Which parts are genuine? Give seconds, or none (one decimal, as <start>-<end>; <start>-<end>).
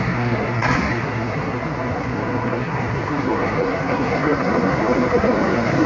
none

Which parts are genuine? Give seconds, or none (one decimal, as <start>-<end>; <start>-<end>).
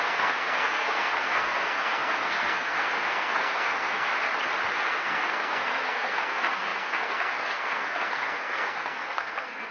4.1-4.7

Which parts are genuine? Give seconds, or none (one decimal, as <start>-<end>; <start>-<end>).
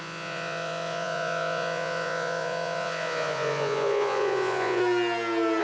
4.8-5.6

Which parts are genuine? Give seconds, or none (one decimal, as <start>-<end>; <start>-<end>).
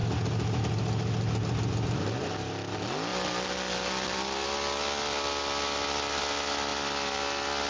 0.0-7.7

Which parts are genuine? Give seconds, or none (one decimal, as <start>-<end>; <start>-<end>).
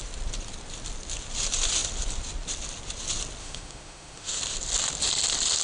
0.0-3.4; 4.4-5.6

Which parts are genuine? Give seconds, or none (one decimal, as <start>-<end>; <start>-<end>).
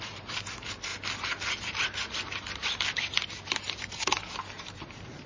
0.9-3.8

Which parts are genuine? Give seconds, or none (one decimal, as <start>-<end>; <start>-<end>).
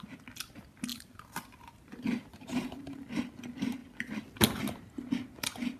0.0-0.9; 3.3-5.8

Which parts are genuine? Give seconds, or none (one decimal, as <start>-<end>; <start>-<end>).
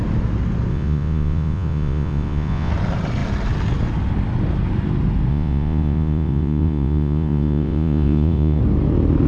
0.0-0.7; 2.7-5.3; 8.6-9.3